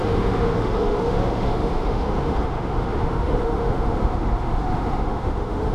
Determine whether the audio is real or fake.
fake